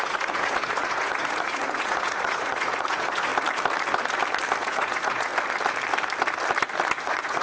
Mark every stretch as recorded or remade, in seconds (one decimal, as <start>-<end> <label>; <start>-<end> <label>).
0.0-3.3 remade; 3.3-4.6 recorded; 4.6-5.3 remade; 5.3-7.0 recorded; 7.0-7.4 remade